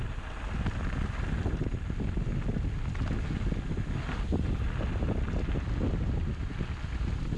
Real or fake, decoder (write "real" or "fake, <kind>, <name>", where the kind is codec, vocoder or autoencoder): real